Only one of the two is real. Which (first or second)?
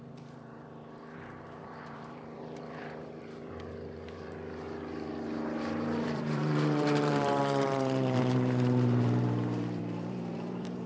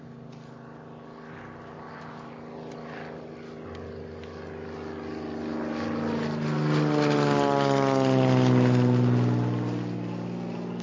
second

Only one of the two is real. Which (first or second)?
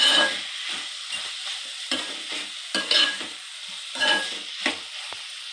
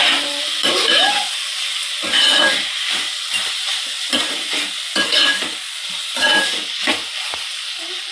first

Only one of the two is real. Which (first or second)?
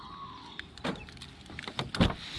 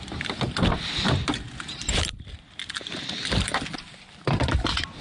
first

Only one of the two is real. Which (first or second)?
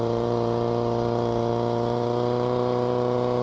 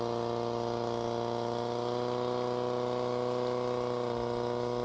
second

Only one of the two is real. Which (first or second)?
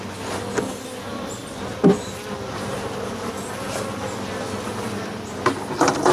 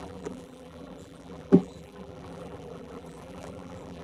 first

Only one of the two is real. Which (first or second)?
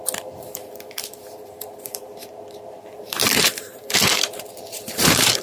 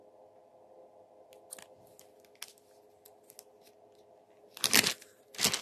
second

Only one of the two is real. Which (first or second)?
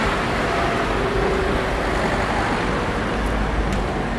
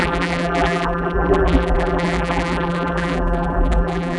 first